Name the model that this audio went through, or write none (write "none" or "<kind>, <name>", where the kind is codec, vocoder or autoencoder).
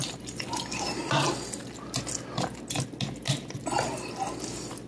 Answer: none